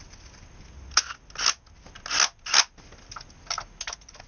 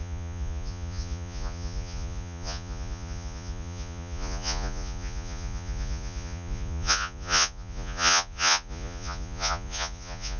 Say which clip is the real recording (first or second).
first